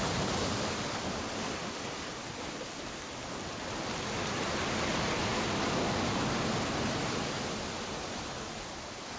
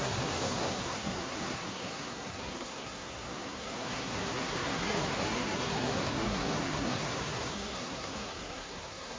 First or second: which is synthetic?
second